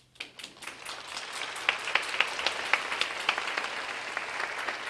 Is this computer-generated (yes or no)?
no